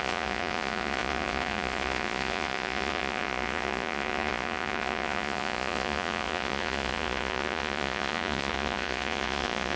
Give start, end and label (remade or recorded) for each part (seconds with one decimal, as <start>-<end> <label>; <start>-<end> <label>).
0.0-9.8 remade